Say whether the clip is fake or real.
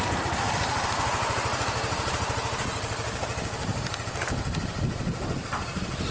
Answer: real